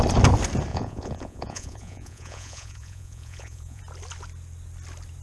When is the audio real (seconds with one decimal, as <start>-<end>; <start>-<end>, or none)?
0.0-0.7; 3.8-5.2

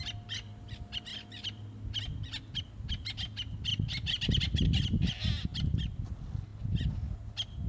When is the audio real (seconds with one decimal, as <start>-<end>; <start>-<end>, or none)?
0.0-7.7

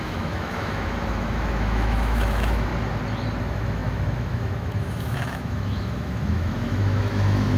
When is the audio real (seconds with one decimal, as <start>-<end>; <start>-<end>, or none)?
2.7-3.4

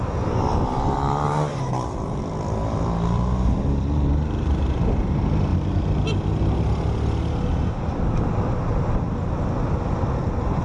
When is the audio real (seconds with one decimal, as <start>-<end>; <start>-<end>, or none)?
0.0-0.5; 2.2-10.6

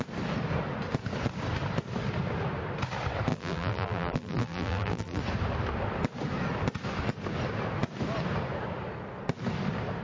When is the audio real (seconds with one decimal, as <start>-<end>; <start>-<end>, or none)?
0.0-3.3; 5.2-10.0

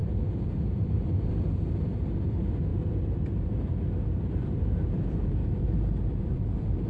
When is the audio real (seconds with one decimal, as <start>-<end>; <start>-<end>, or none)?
1.3-2.7